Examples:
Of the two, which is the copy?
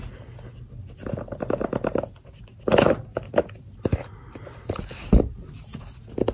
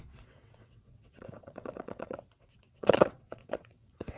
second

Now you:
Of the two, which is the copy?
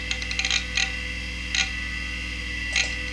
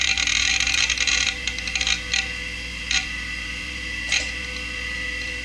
second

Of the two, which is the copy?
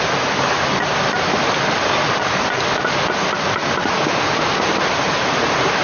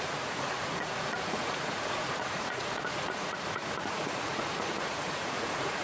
second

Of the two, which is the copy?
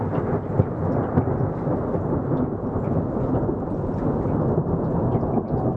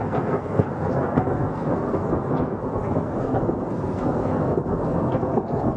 second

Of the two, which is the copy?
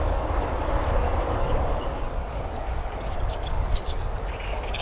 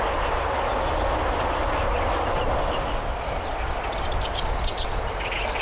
first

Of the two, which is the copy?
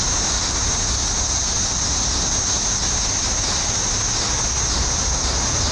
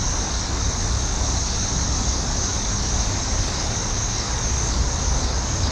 second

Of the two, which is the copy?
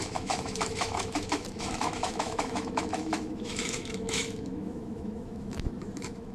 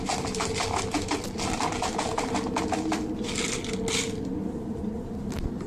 first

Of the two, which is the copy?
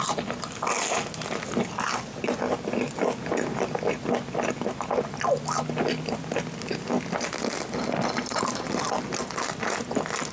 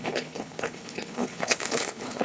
second